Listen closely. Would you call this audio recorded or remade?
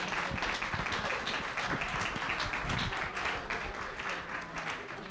recorded